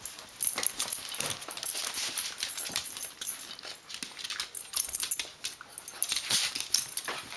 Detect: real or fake real